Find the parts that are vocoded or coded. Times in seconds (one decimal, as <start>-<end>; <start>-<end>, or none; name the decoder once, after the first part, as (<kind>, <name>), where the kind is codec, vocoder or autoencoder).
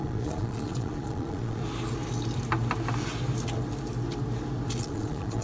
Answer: 0.0-1.6 (vocoder, Vocos); 4.8-5.4